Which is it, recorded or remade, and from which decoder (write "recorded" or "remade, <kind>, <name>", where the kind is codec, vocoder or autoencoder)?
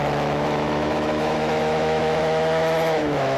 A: remade, autoencoder, DAC-VAE